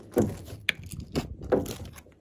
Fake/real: real